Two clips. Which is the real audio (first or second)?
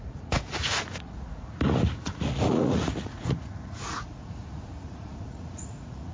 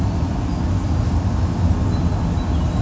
second